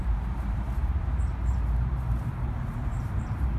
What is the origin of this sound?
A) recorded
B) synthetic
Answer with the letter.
B